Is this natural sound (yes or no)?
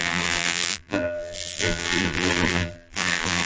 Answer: no